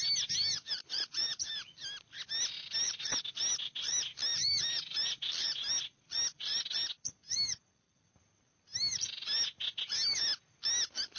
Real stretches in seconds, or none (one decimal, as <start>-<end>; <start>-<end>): 0.0-0.5; 1.5-4.3; 6.9-11.2